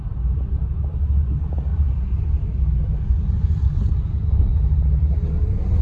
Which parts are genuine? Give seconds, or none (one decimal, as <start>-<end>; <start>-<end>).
0.0-5.8